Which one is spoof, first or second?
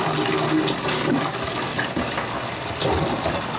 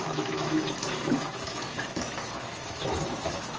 second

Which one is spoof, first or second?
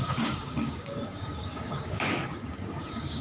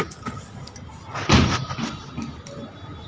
first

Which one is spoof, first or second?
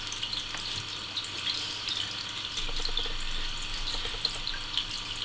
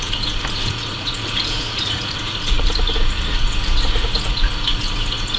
second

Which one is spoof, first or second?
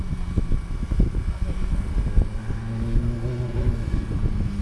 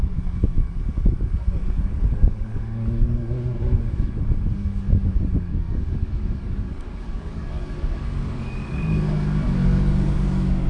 second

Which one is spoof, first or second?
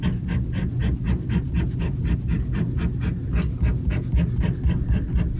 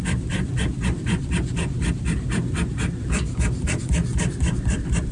second